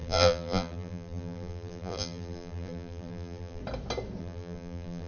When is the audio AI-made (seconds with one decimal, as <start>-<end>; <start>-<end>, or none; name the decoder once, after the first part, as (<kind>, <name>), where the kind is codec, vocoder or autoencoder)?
0.0-3.6 (vocoder, BigVGAN v2); 4.2-5.1